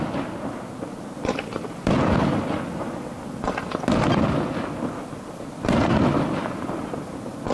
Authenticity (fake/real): real